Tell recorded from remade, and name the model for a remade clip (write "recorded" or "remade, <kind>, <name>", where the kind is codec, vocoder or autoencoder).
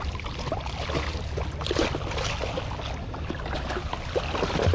recorded